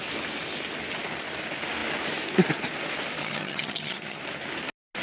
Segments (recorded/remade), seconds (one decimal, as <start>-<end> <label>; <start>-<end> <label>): 0.0-3.2 recorded; 3.2-4.2 remade; 4.2-5.0 recorded